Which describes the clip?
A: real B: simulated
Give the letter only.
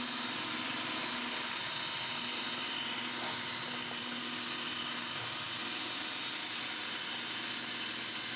A